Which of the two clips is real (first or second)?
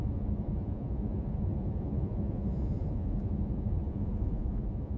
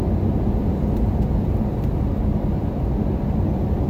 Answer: second